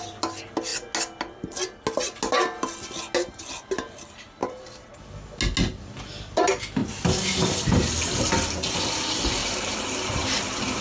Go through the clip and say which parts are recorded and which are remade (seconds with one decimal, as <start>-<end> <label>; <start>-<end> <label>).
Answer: 0.0-4.4 recorded; 4.4-4.9 remade; 4.9-9.4 recorded; 9.4-10.8 remade